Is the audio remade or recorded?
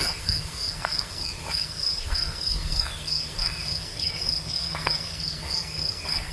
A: remade